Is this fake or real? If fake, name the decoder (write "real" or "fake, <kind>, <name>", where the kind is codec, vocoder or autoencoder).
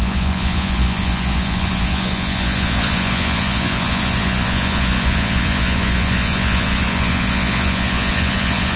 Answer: fake, vocoder, Vocos